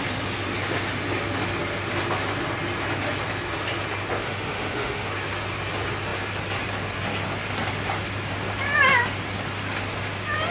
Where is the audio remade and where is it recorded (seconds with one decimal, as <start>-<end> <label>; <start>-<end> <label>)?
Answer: 0.0-4.2 recorded; 4.2-5.1 remade; 5.1-10.5 recorded